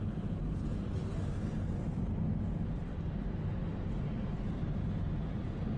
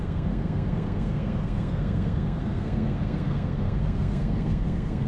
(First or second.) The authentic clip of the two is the first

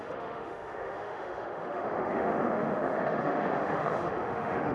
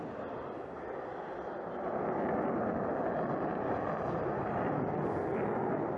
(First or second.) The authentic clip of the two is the second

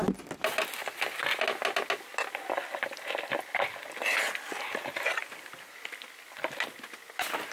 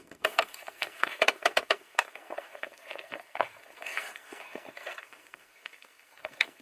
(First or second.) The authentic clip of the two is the first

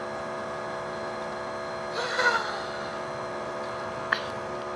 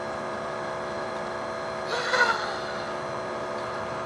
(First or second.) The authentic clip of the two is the first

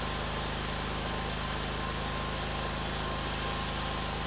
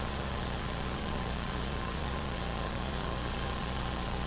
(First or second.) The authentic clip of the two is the first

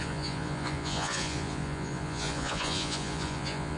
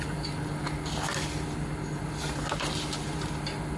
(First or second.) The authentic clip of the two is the second